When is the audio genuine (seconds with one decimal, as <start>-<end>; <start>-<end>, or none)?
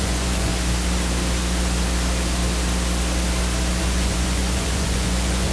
0.5-3.8